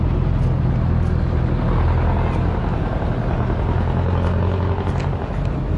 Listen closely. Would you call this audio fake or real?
real